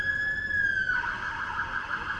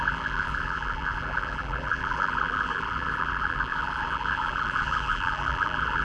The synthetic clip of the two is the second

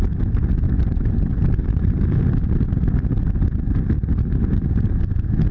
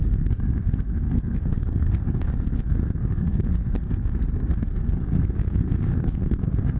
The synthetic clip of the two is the second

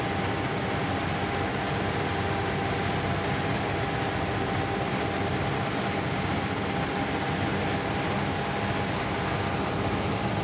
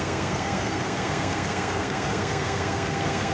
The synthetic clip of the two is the second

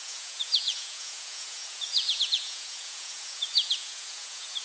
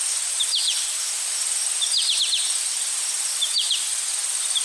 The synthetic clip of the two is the first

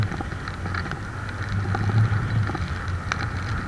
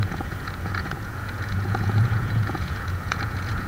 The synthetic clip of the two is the second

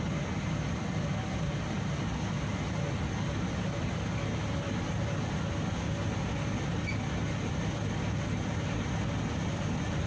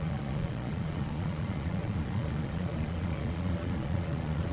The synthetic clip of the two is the second